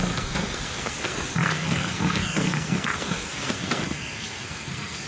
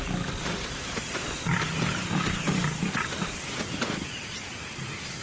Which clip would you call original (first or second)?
second